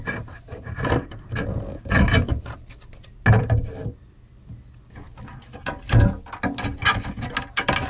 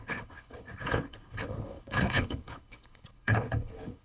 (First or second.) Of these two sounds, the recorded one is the first